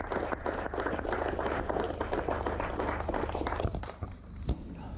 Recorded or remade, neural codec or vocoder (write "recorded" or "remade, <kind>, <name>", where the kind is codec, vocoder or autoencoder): remade, vocoder, BigVGAN v2